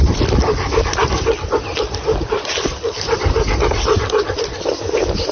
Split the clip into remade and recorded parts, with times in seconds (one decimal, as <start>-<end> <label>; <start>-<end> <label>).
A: 0.0-5.3 recorded